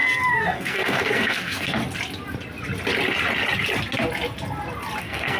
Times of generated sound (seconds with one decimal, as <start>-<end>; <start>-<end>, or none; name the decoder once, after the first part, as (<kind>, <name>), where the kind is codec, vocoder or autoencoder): 0.0-1.8 (codec, SNAC); 5.0-5.4